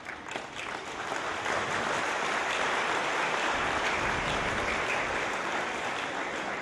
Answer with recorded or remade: remade